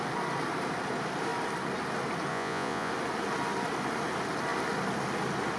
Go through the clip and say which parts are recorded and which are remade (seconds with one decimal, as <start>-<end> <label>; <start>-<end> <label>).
0.0-2.3 recorded; 2.3-2.9 remade; 2.9-5.6 recorded